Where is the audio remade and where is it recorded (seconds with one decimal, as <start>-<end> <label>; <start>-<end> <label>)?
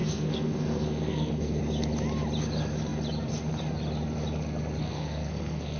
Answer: 0.0-1.6 remade; 1.6-4.8 recorded; 4.8-5.8 remade